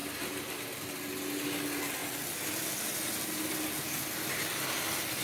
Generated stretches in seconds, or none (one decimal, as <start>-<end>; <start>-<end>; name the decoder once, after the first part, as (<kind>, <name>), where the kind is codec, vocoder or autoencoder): none